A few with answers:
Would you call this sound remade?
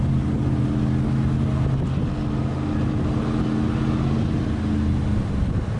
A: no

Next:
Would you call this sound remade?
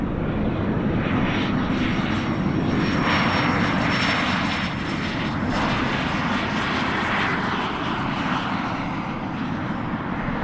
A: no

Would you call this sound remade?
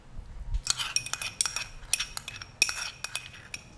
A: no